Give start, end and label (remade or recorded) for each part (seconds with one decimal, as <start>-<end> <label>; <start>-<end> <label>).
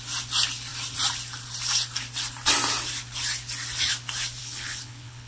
0.0-4.4 recorded; 4.4-5.3 remade